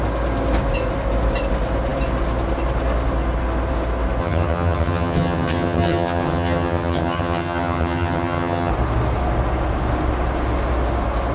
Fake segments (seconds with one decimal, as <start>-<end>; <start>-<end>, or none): 4.2-8.7